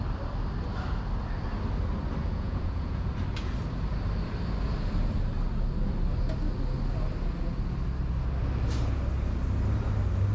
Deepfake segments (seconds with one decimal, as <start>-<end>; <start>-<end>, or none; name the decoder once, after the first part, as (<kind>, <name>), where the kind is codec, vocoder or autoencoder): 2.2-3.1 (vocoder, Vocos)